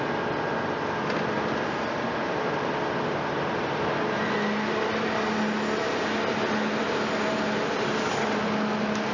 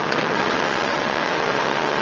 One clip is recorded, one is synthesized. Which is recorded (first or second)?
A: first